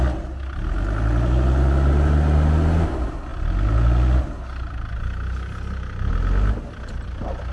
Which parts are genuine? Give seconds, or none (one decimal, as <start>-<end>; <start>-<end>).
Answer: 0.0-7.5